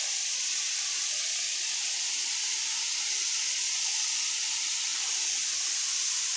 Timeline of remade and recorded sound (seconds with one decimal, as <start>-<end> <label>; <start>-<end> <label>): 0.0-6.4 recorded